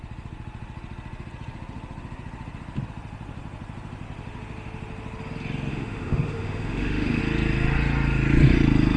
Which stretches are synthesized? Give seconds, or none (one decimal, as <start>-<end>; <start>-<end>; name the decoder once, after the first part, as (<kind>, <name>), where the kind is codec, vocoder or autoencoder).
5.7-7.2 (autoencoder, DAC-VAE)